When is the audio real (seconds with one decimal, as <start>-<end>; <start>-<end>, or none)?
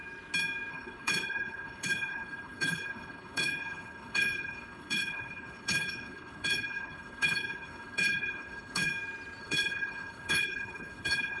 0.0-0.7; 8.9-9.4